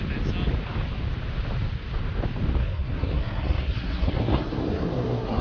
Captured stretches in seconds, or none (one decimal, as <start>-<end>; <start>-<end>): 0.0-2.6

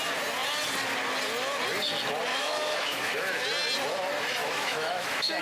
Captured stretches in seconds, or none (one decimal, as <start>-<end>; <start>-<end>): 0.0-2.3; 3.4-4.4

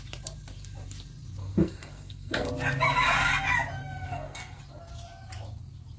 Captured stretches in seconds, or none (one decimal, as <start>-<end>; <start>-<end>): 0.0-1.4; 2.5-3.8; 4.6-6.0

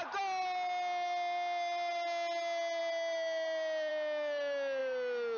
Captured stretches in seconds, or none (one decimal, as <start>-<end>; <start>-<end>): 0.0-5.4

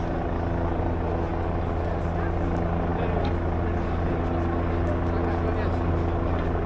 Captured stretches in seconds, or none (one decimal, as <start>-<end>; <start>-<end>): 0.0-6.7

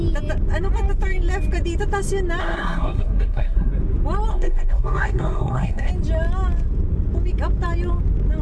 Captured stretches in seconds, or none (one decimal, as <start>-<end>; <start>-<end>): 0.0-2.4; 3.7-4.3; 5.9-8.4

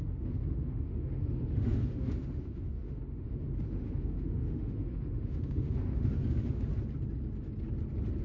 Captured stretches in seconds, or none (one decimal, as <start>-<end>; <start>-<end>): 6.7-8.2

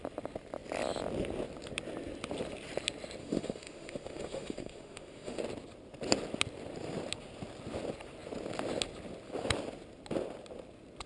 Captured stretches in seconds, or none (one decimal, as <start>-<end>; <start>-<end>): 0.0-3.2; 5.4-11.1